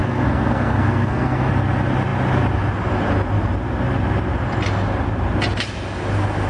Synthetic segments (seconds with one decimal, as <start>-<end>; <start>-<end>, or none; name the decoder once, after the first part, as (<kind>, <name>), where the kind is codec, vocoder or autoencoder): 0.0-1.5 (codec, SNAC)